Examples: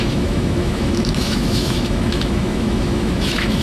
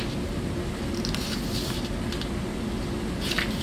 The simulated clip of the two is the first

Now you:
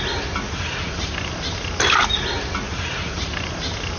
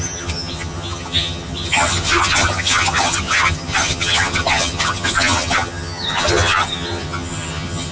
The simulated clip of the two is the second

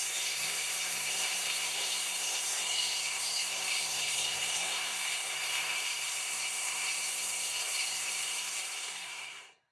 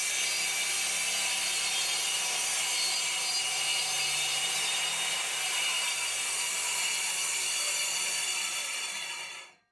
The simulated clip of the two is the first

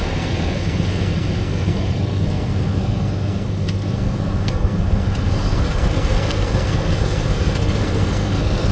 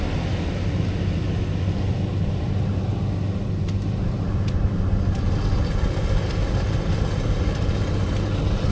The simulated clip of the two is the first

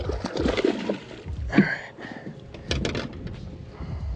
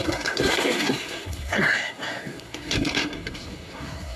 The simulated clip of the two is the second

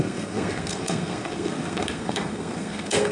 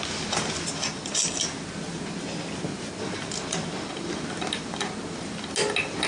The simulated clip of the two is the first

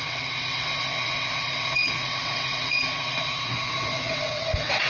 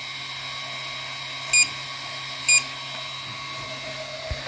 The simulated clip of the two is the first